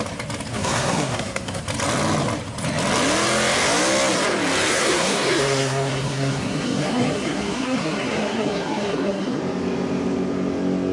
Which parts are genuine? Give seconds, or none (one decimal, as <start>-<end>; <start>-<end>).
0.0-0.5; 1.6-4.7; 9.4-10.9